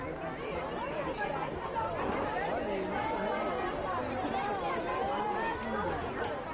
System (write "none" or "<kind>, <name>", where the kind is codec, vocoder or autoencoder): none